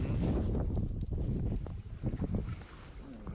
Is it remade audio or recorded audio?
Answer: recorded